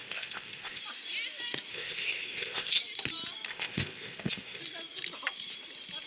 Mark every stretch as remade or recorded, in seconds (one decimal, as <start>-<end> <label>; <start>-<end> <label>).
0.0-0.8 remade; 0.8-1.7 recorded; 1.7-2.8 remade; 2.8-3.5 recorded; 3.5-4.6 remade; 4.6-6.1 recorded